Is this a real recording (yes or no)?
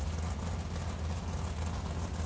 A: yes